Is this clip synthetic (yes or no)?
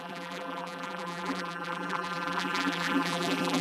yes